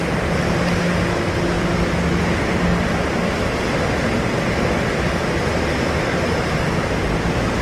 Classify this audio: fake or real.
real